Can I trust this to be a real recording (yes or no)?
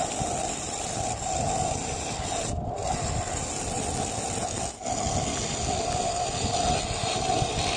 yes